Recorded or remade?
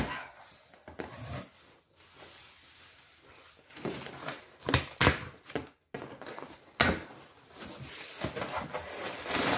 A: recorded